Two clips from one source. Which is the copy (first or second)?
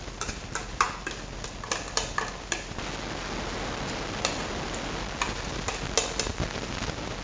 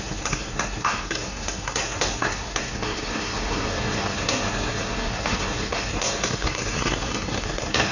second